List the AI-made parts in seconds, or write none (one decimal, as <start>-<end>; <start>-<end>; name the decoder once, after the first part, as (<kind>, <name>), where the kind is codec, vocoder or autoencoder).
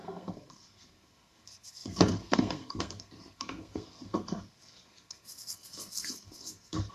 0.0-6.9 (codec, SNAC)